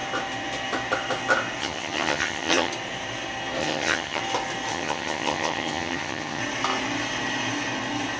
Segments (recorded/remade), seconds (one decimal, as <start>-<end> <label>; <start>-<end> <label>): 0.0-1.6 recorded; 1.6-2.7 remade; 2.7-3.6 recorded; 3.6-4.2 remade; 4.2-4.7 recorded; 4.7-6.4 remade; 6.4-8.2 recorded